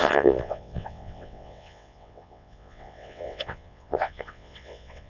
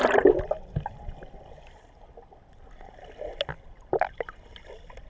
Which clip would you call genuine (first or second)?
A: second